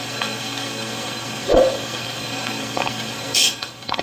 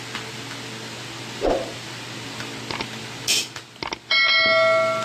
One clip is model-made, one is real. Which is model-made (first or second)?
first